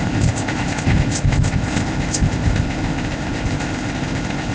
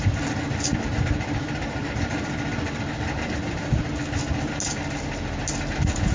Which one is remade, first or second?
first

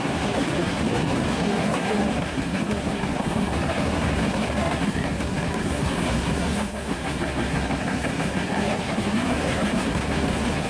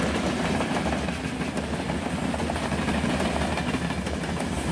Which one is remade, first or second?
first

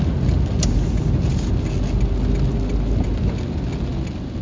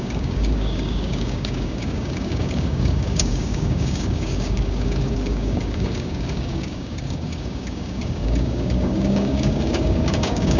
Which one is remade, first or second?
second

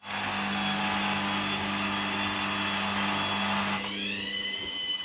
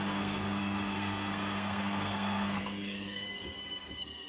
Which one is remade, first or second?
second